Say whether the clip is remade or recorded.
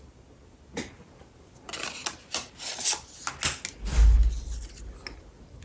recorded